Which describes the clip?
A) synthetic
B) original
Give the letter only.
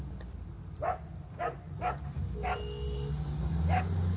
B